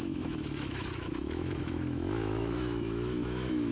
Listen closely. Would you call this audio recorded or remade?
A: remade